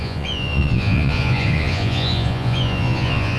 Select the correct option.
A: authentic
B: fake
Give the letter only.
B